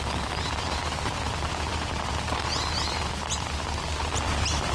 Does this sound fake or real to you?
fake